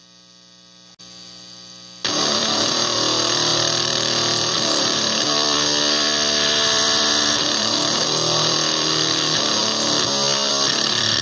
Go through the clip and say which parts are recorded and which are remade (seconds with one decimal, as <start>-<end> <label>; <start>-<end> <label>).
0.0-2.1 recorded; 2.1-9.6 remade; 9.6-10.5 recorded; 10.5-11.2 remade